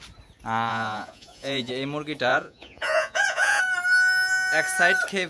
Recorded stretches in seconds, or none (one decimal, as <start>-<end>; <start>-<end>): 0.0-0.7; 1.7-2.3; 3.6-5.3